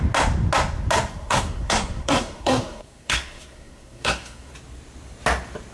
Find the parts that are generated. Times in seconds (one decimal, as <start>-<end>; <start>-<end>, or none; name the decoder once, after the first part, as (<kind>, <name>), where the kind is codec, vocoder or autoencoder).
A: 1.1-4.5 (codec, SNAC)